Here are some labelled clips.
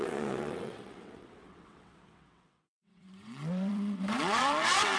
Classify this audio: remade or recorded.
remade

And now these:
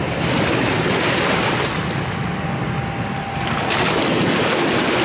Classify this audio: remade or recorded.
recorded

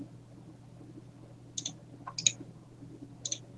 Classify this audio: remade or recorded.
recorded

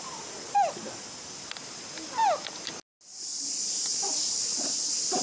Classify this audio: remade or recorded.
recorded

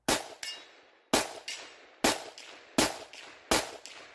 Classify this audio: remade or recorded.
recorded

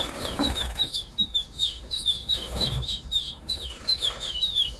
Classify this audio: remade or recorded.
remade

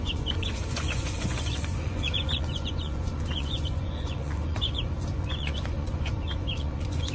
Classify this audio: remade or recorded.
remade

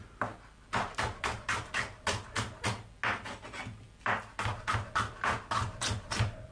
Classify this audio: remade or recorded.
recorded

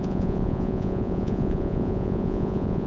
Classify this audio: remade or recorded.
remade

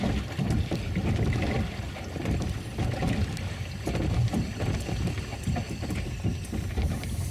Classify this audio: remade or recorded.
recorded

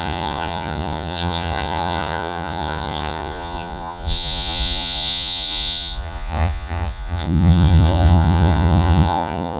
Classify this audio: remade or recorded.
remade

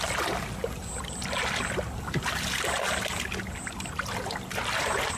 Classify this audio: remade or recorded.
recorded